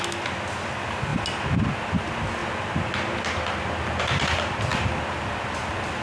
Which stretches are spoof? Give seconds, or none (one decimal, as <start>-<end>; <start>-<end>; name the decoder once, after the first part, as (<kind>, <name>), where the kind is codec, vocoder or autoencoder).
none

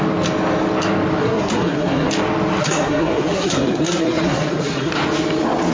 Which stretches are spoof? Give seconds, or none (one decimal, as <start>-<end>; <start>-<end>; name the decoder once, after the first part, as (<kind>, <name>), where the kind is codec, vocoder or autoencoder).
1.2-2.1 (codec, SNAC); 2.6-4.9

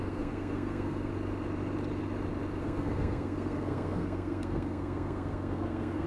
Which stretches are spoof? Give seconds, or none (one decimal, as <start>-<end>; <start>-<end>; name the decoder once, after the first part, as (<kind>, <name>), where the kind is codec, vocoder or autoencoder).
0.0-1.1 (codec, SNAC); 2.6-6.1

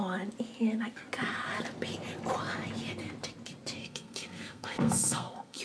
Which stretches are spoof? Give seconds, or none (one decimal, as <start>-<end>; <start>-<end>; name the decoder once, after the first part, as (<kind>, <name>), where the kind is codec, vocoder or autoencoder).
3.8-5.6 (codec, SNAC)

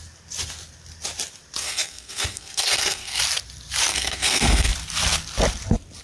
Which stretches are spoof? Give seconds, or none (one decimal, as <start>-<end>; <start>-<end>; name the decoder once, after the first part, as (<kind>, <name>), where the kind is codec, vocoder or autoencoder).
1.6-3.2 (codec, SNAC); 3.9-4.7

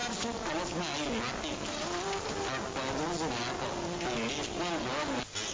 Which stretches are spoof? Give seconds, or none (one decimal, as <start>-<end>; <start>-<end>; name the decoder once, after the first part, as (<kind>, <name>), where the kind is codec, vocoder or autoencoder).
none

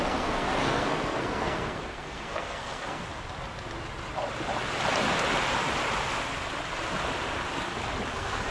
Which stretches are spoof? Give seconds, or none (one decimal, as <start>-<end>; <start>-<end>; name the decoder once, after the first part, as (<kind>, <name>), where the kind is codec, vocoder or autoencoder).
0.0-3.0 (codec, SNAC); 8.1-8.5

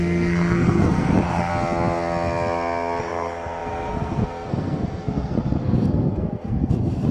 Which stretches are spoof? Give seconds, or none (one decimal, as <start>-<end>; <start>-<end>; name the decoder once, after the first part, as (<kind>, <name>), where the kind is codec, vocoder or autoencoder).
0.0-1.5 (codec, SNAC); 3.0-7.1